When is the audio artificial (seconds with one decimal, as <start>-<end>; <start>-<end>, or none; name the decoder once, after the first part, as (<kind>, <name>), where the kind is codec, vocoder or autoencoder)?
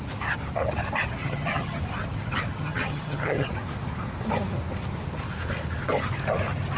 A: 1.2-1.8 (vocoder, HiFi-GAN); 2.5-3.5